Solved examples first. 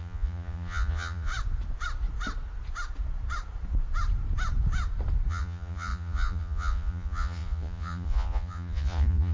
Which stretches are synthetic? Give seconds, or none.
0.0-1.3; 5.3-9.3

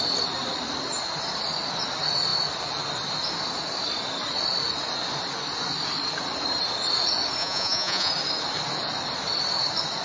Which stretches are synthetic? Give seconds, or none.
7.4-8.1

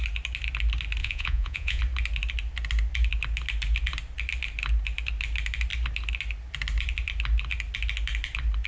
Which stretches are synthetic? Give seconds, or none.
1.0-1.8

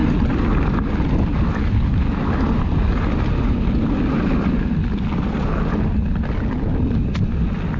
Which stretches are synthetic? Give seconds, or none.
none

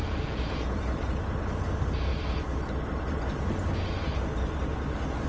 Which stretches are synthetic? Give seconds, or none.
0.0-0.8

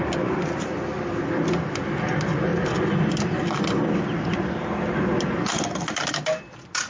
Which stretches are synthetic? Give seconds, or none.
none

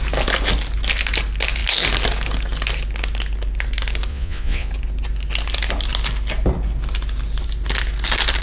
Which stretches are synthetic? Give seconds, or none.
4.1-4.7

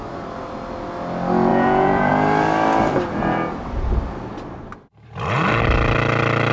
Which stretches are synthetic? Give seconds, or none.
1.5-2.1